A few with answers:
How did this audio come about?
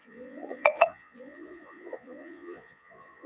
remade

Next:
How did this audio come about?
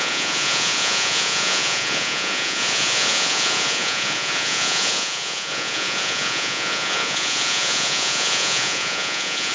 remade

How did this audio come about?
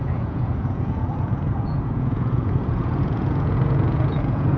remade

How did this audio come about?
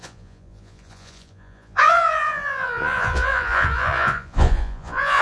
remade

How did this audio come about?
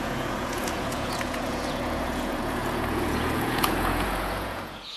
remade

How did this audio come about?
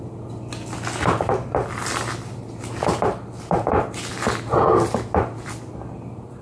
recorded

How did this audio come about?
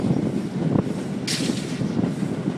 recorded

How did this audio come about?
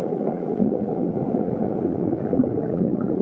remade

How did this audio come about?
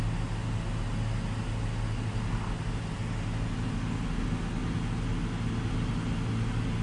recorded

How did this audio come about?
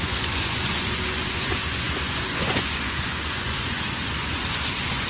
remade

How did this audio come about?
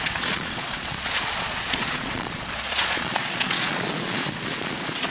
remade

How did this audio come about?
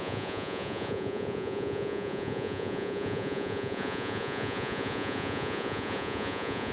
remade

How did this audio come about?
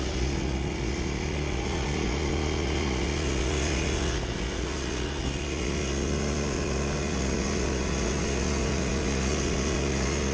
remade